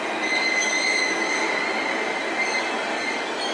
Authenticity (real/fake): real